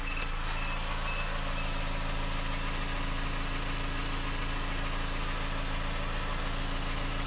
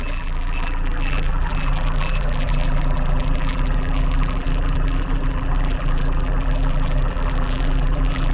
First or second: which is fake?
second